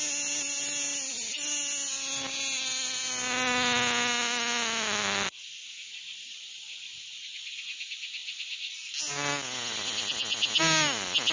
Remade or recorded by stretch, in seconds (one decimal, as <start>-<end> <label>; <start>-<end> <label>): 0.0-11.3 recorded